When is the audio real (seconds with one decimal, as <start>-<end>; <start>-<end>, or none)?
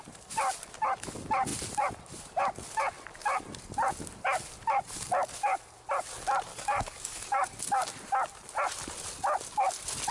0.0-6.5; 7.6-10.1